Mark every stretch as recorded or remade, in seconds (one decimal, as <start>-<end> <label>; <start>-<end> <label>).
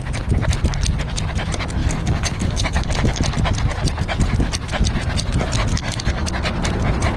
0.0-1.8 recorded; 1.8-3.2 remade; 3.2-5.7 recorded; 5.7-6.3 remade; 6.3-7.2 recorded